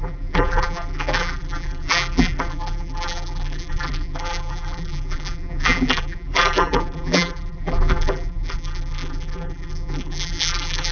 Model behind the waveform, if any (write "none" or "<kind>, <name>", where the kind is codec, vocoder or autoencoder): vocoder, BigVGAN v2